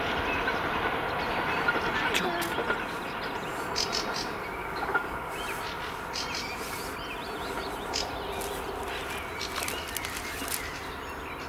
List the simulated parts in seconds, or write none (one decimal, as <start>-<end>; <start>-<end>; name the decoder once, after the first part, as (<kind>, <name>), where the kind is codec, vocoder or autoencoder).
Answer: 4.6-5.3 (codec, DAC)